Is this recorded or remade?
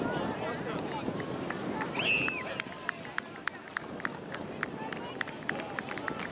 recorded